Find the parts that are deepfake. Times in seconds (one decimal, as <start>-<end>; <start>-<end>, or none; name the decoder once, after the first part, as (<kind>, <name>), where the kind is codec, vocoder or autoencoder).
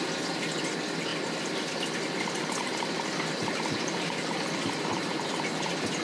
1.1-4.7 (vocoder, BigVGAN v2)